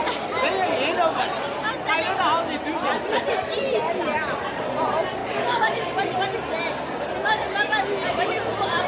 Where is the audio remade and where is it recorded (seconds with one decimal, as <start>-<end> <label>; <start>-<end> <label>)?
0.0-5.2 recorded; 5.2-5.8 remade; 5.8-8.9 recorded